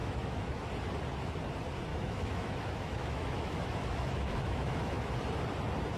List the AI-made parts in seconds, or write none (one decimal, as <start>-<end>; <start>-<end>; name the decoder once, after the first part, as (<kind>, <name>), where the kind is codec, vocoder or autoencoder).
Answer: 0.0-0.7 (autoencoder, DAC-VAE); 1.9-5.1